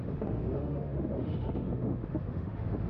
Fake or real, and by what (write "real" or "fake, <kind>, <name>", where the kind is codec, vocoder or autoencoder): fake, autoencoder, DAC-VAE